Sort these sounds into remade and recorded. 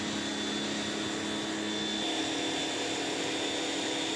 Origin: recorded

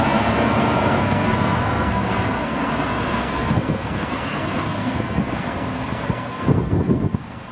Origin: remade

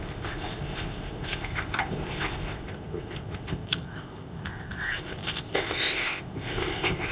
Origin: remade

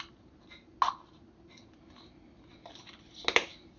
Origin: recorded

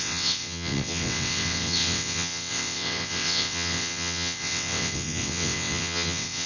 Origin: remade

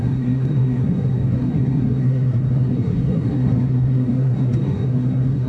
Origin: remade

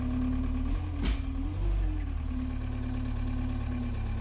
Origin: recorded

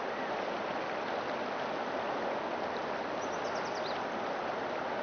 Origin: recorded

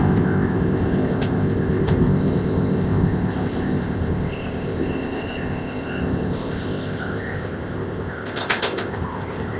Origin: remade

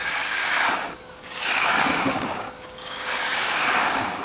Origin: remade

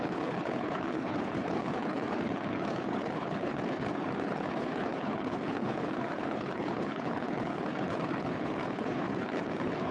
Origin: remade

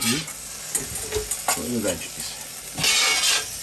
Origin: recorded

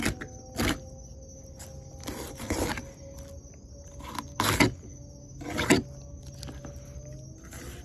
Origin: recorded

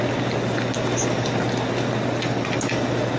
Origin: recorded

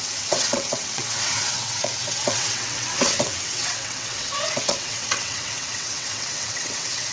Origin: remade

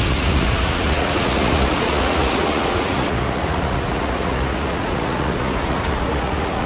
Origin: remade